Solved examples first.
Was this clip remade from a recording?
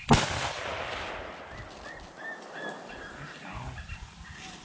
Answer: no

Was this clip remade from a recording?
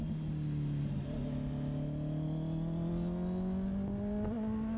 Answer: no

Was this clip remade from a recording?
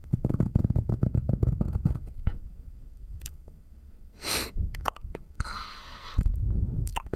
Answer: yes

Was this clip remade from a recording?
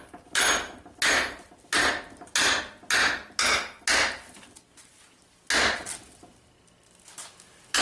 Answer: no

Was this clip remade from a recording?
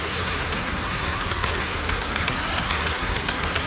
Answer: yes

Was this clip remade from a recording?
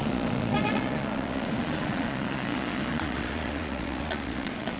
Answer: yes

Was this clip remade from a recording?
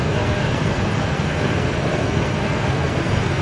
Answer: yes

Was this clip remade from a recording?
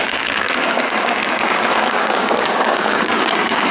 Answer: yes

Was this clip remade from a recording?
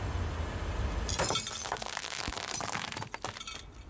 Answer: no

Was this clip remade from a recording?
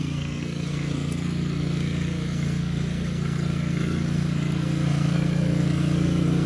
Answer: yes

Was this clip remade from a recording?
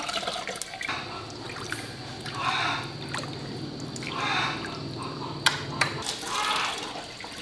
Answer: no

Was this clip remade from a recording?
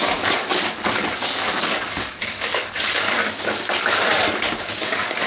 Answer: yes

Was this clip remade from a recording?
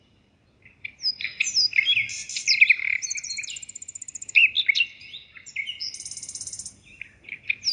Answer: no